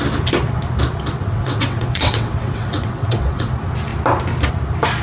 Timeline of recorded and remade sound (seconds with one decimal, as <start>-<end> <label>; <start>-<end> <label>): 0.0-1.2 recorded; 1.2-3.5 remade; 3.5-5.0 recorded